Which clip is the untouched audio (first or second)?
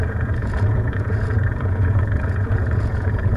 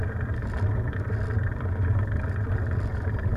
second